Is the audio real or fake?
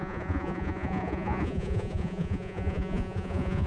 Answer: fake